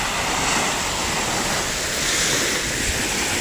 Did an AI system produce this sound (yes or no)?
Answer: no